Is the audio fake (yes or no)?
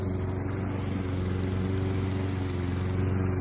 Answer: no